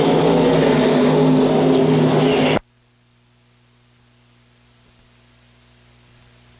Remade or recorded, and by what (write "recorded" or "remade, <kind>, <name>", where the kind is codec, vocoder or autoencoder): recorded